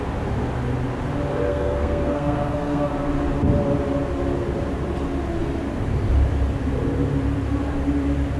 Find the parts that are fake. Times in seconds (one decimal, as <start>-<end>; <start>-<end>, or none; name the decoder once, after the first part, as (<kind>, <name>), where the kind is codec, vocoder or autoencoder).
1.5-2.9 (codec, SNAC)

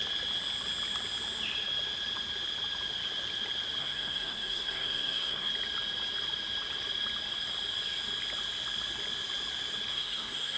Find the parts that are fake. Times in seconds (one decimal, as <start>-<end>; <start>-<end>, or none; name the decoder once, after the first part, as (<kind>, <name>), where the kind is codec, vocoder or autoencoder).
3.8-5.5 (codec, SNAC); 9.9-10.6

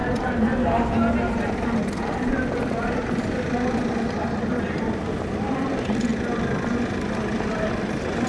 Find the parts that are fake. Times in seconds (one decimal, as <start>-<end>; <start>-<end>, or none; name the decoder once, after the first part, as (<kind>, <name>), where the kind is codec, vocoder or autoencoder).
6.1-7.7 (vocoder, BigVGAN v2)

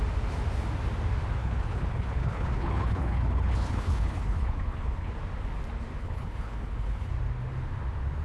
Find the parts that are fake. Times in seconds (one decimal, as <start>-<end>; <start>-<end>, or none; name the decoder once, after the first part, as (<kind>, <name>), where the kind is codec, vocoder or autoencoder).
1.4-5.1 (codec, HILCodec); 6.0-7.1